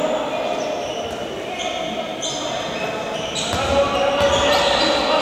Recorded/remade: recorded